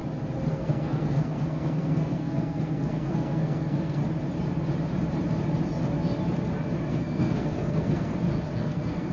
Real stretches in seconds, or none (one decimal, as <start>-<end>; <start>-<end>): 0.0-0.5; 4.0-6.9; 8.1-8.6